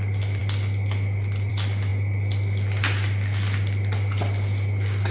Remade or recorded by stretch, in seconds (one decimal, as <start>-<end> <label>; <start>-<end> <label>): 0.0-5.1 recorded